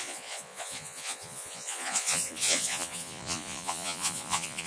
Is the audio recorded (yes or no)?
no